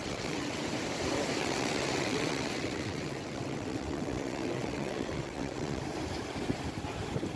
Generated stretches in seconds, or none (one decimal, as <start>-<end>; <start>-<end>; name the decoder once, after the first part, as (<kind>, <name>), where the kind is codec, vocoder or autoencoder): 0.0-0.6 (vocoder, WaveNeXt); 1.4-5.8